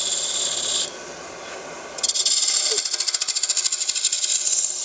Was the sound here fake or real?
real